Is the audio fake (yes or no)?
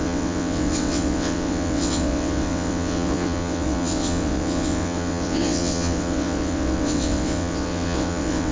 yes